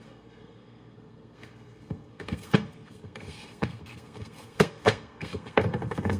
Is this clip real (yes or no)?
no